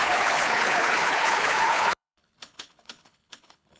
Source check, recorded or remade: remade